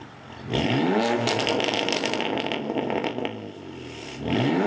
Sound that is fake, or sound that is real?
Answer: real